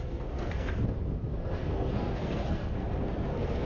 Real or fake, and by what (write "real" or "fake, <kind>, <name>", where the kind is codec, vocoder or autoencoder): fake, codec, SNAC